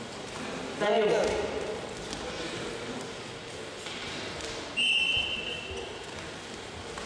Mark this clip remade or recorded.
recorded